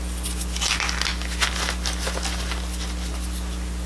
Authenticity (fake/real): real